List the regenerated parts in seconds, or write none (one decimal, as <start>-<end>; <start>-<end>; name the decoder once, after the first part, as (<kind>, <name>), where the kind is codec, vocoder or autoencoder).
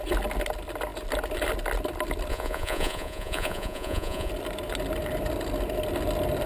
2.3-4.3 (vocoder, Vocos)